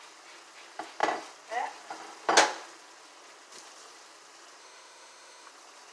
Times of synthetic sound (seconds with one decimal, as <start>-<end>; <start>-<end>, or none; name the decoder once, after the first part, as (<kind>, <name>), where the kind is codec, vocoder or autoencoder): 4.6-5.5 (autoencoder, DAC-VAE)